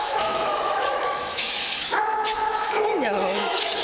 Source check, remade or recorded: remade